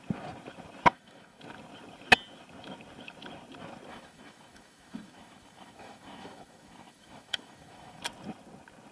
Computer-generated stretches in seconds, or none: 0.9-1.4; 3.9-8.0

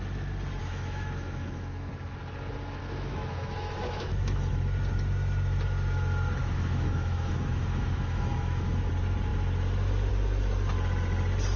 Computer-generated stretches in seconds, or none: 0.6-1.9; 2.8-4.5; 6.4-8.9

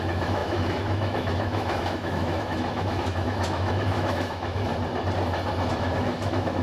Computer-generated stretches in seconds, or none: 0.0-4.7; 5.7-6.6

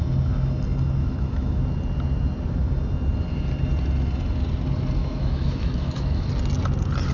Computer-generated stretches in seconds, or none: 1.0-1.6; 5.0-6.3

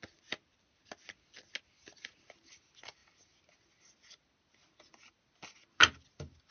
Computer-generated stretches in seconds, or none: none

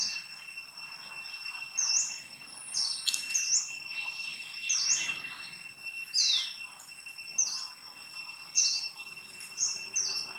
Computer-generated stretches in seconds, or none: none